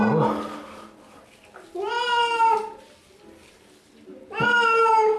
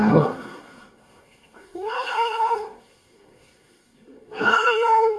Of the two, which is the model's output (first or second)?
second